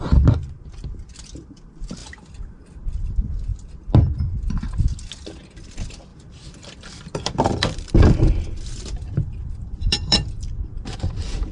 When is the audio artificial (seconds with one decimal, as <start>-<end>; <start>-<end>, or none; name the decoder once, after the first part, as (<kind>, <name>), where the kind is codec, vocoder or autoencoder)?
2.0-3.1 (vocoder, BigVGAN v2); 6.1-11.1